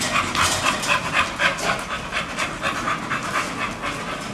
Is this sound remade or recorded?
recorded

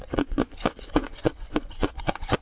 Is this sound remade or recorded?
remade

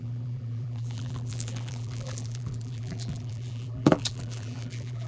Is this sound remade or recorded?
remade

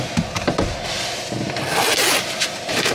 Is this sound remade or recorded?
recorded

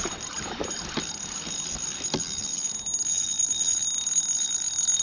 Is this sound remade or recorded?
recorded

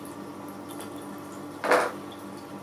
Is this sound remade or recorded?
recorded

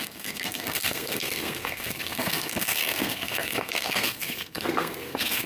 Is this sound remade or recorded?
remade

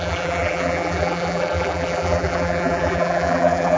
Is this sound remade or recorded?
remade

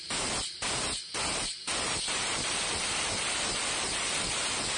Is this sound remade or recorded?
recorded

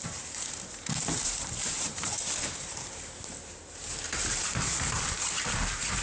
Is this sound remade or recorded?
remade